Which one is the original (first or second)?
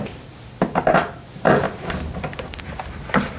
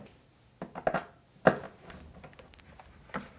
second